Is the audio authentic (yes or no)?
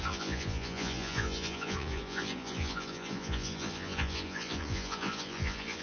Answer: no